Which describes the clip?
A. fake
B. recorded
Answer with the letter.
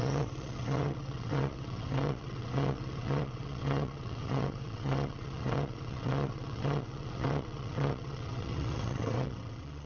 A